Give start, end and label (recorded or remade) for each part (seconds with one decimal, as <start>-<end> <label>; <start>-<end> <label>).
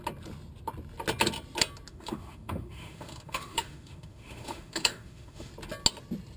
0.0-1.9 recorded; 1.9-5.5 remade; 5.5-6.4 recorded